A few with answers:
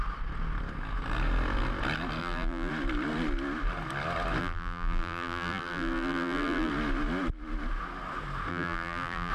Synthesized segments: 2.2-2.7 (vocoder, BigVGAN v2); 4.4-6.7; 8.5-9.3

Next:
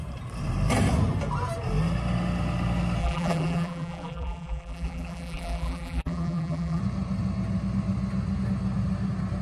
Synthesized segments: 3.0-6.8 (vocoder, BigVGAN v2)

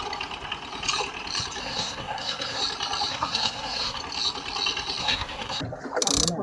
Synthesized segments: 1.6-2.6 (codec, SNAC); 3.1-4.0; 5.0-5.6

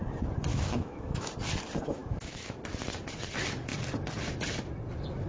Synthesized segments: 0.5-1.3 (autoencoder, DAC-VAE); 2.0-2.6